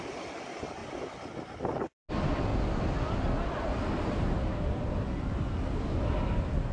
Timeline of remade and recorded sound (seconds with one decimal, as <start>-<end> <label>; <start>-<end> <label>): 0.0-6.7 recorded